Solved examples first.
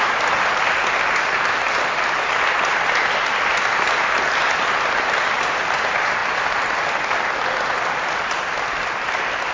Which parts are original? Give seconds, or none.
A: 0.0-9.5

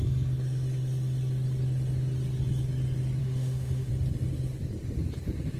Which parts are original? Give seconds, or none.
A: 0.0-3.2; 3.9-5.6

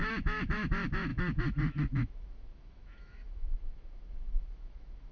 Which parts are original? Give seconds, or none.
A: none

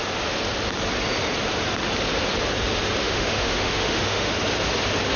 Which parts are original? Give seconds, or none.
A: 0.0-3.0; 4.3-5.2